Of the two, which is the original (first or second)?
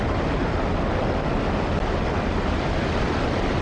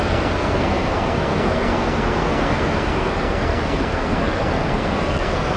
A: first